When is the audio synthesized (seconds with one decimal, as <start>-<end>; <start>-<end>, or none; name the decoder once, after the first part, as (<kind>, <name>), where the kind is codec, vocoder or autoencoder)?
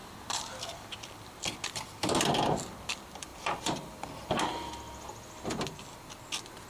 3.3-4.7 (vocoder, BigVGAN v2)